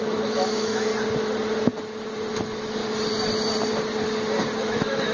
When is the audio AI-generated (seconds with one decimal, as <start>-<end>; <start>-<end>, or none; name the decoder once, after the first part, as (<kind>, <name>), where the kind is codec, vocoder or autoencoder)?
0.0-0.9 (autoencoder, DAC-VAE); 2.3-2.8; 4.6-5.1